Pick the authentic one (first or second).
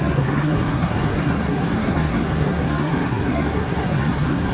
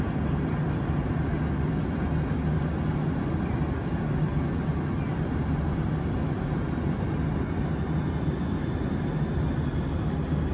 second